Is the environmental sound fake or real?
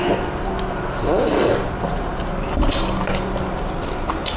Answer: real